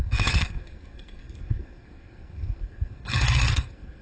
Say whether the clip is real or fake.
fake